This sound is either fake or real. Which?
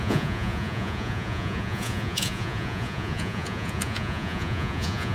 fake